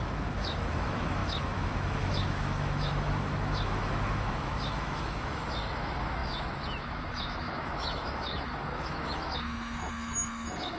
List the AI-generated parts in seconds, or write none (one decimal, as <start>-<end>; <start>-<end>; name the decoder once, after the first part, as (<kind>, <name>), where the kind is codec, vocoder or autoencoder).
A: 0.0-10.8 (autoencoder, DAC-VAE)